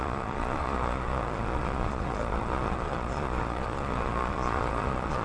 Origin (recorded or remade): remade